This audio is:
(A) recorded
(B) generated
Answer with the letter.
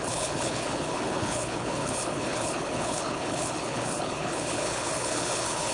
B